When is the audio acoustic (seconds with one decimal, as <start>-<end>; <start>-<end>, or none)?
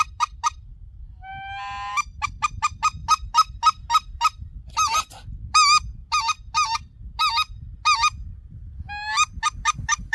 0.0-10.1